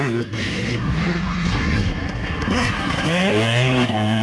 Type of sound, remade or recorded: remade